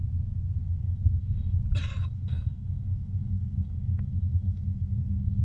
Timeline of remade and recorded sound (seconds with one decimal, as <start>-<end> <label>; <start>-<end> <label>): 0.0-0.6 recorded; 0.6-1.6 remade; 1.6-2.0 recorded; 2.0-5.4 remade